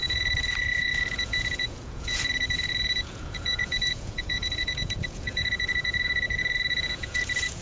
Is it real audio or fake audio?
fake